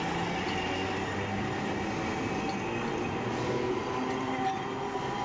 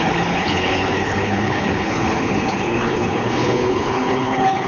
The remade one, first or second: second